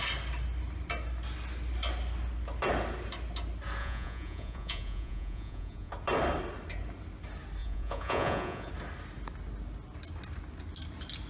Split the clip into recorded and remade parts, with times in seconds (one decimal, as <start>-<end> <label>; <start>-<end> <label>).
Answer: 0.0-3.8 recorded; 3.8-5.9 remade; 5.9-7.6 recorded; 7.6-8.7 remade; 8.7-11.3 recorded